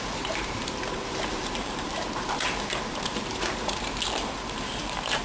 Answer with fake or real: fake